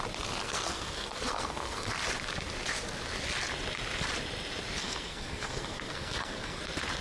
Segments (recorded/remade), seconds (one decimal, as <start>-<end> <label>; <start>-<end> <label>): 0.0-0.4 recorded; 0.4-1.9 remade; 1.9-4.8 recorded; 4.8-6.6 remade; 6.6-7.0 recorded